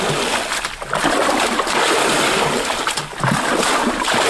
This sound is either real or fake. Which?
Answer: real